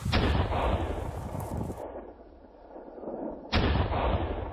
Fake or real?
real